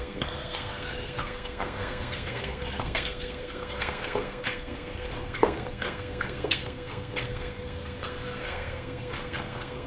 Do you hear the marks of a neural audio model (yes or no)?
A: yes